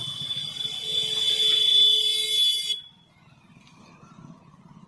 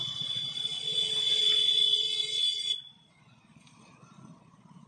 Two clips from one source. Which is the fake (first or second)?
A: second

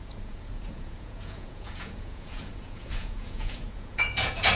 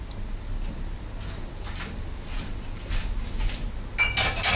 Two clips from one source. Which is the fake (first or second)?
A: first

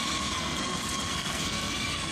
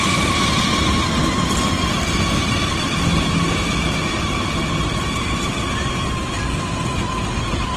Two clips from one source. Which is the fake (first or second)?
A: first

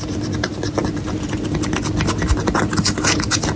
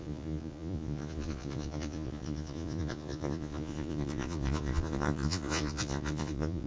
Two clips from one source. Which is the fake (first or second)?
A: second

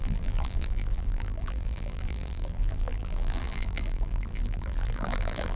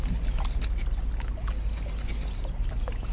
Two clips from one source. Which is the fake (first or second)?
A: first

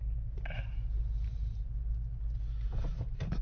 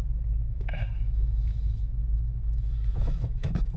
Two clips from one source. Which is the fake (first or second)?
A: second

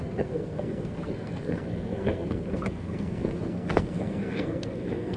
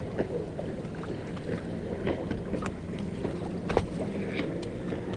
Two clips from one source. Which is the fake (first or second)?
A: first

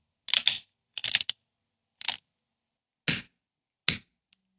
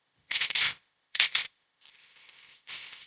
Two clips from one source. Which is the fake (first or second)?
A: second